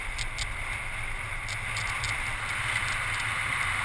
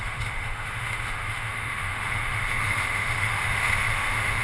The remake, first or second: second